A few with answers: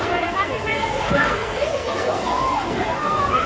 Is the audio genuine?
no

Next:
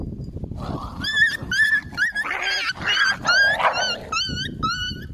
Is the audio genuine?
yes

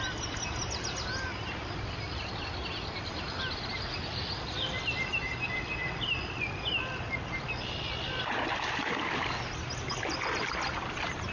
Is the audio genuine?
yes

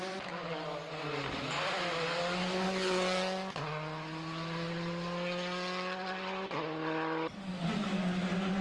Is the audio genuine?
yes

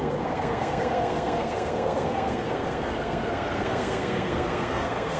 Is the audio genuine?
no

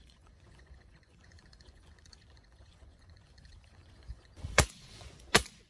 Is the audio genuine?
no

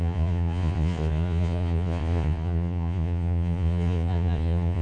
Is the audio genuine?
no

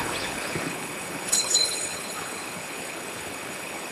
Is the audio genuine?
no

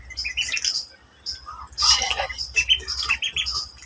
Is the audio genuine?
yes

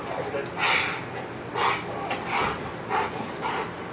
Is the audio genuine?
yes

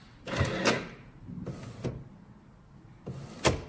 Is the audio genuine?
yes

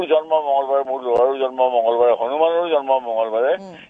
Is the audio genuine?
yes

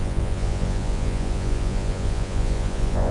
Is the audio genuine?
no